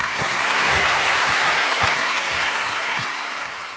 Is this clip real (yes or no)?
no